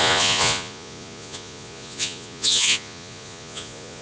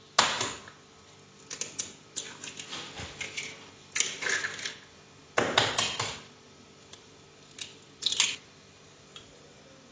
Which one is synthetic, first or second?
first